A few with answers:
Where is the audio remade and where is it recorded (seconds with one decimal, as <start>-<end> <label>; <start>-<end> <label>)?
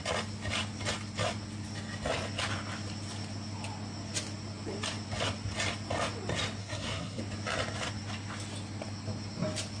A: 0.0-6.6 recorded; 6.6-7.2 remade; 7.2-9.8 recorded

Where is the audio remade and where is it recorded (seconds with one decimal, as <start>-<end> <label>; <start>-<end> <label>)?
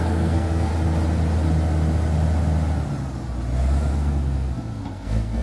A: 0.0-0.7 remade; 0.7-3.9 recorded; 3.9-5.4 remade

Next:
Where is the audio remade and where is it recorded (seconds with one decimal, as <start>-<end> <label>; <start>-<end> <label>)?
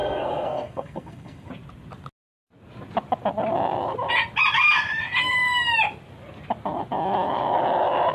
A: 0.0-1.5 remade; 1.5-8.1 recorded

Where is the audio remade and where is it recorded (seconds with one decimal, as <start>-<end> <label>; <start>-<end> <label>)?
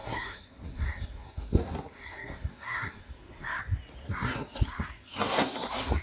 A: 0.0-3.6 remade; 3.6-4.0 recorded; 4.0-6.0 remade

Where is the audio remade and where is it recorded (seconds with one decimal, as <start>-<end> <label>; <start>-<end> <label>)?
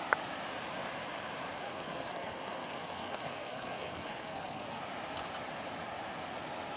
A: 0.0-1.6 recorded; 1.6-4.8 remade; 4.8-6.8 recorded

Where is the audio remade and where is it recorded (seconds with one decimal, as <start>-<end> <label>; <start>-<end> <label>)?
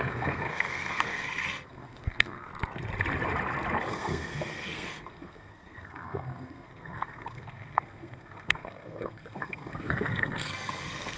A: 0.0-2.5 remade; 2.5-3.9 recorded; 3.9-11.2 remade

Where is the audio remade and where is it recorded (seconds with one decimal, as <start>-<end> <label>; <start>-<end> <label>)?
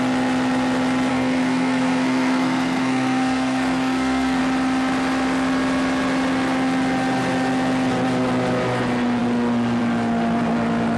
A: 0.0-1.1 recorded; 1.1-4.4 remade; 4.4-11.0 recorded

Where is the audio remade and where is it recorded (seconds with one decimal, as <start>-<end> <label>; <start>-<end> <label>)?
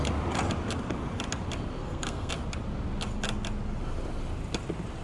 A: 0.0-1.8 recorded; 1.8-2.3 remade; 2.3-5.0 recorded